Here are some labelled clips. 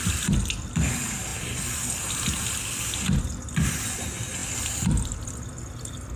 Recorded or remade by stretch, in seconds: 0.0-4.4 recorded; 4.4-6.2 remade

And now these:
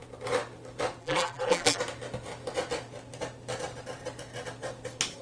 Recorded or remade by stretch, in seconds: 0.0-1.0 recorded; 1.0-1.8 remade; 1.8-5.2 recorded

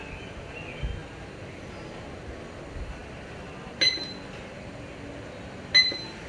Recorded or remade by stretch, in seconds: 0.0-6.3 recorded